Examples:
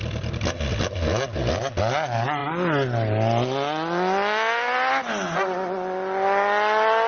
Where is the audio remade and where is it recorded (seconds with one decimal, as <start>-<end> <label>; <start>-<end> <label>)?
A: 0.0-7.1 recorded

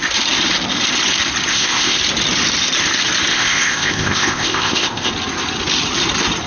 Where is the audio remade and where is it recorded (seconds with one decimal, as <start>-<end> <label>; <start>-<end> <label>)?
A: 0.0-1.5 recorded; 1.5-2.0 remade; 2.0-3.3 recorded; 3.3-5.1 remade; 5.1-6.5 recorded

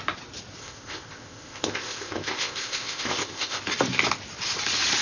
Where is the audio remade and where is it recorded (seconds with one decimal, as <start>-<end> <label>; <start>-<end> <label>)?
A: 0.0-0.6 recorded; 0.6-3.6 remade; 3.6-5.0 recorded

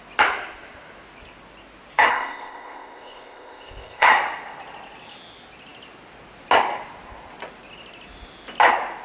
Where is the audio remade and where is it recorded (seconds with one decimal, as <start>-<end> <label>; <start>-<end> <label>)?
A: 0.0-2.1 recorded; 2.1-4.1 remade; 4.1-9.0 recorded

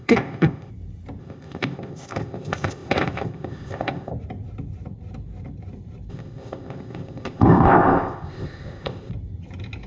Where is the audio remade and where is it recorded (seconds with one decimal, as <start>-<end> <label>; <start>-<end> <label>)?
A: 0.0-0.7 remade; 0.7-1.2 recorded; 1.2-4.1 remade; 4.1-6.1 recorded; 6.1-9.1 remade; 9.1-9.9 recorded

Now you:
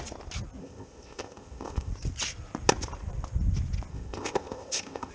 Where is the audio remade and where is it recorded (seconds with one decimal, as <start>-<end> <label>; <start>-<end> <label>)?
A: 0.0-0.6 recorded; 0.6-1.9 remade; 1.9-3.9 recorded; 3.9-5.1 remade